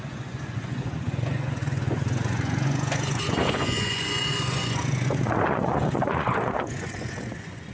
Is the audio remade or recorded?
remade